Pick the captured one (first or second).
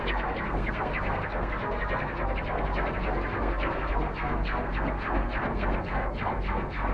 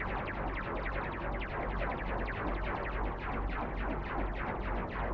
second